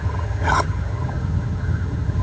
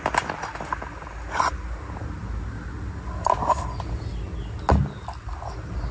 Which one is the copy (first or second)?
first